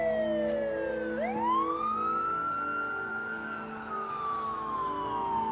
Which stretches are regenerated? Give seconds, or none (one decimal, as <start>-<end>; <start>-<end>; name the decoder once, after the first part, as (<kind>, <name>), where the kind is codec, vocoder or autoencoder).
3.1-5.5 (autoencoder, DAC-VAE)